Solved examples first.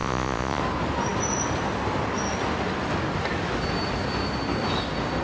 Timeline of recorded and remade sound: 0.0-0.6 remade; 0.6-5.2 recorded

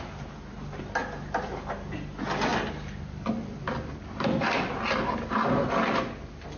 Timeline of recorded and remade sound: 0.0-6.6 recorded